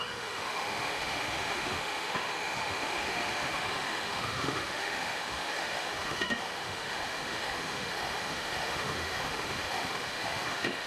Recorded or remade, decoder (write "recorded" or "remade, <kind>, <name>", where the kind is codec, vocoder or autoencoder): remade, autoencoder, DAC-VAE